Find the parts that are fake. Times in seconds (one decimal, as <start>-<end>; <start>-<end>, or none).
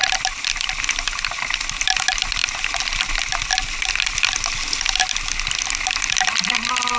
none